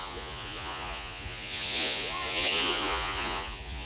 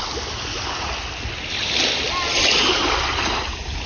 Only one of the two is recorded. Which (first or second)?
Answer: second